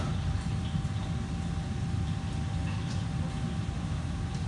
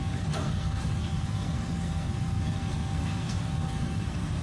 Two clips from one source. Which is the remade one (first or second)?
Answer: second